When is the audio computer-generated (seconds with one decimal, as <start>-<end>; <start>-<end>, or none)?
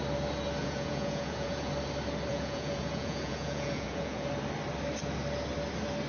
0.6-1.7; 2.3-4.3